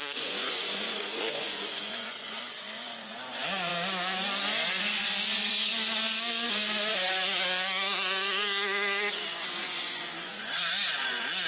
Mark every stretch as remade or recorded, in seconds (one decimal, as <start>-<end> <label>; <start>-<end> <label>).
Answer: 0.0-3.7 remade; 3.7-4.8 recorded; 4.8-5.7 remade; 5.7-6.5 recorded; 6.5-6.9 remade; 6.9-9.1 recorded; 9.1-11.5 remade